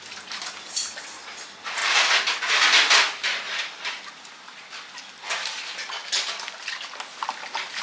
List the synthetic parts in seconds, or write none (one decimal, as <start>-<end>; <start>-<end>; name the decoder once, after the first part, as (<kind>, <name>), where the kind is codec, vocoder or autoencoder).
3.2-5.6 (vocoder, BigVGAN v2)